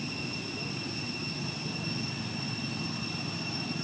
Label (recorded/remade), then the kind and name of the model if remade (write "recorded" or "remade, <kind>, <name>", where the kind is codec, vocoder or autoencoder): recorded